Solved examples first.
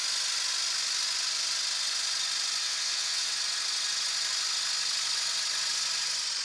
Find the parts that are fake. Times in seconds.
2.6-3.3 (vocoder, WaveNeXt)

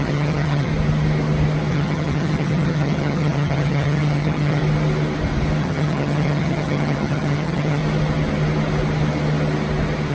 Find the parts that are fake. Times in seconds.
0.0-0.7 (vocoder, HiFi-GAN); 1.7-4.6; 5.6-7.8

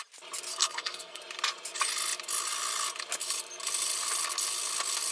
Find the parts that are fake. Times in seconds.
0.5-1.2 (codec, SNAC)

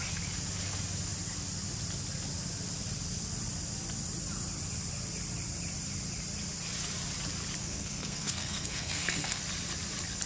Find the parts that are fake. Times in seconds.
7.6-9.4 (codec, SNAC)

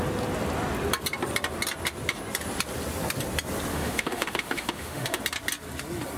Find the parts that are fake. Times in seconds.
3.7-5.2 (autoencoder, DAC-VAE)